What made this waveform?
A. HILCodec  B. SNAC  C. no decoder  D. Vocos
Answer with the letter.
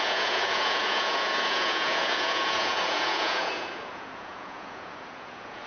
D